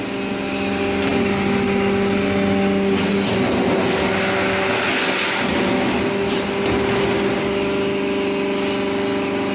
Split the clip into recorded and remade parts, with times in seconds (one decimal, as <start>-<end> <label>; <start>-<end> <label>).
0.0-9.5 recorded

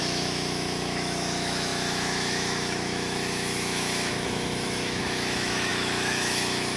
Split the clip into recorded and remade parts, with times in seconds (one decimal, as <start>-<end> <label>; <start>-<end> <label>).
0.0-6.8 remade

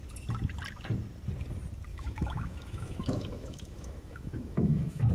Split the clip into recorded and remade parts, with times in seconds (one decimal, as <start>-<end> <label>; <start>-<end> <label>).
0.0-1.9 recorded; 1.9-5.1 remade

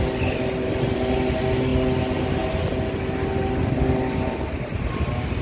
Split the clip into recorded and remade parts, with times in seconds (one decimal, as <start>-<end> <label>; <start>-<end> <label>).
0.0-5.4 recorded